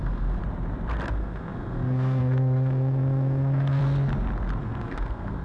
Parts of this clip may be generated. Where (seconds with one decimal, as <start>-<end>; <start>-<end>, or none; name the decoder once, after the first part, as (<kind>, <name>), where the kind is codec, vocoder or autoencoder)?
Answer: 0.0-0.4 (codec, SNAC); 1.1-3.8; 4.6-5.4